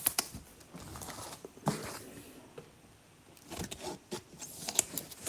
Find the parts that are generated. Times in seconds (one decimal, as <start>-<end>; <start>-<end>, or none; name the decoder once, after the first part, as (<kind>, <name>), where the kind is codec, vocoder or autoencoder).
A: none